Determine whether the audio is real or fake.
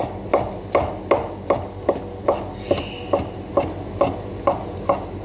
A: real